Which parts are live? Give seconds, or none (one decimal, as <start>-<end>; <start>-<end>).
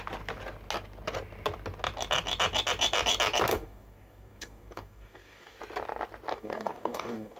0.0-3.5; 5.6-6.3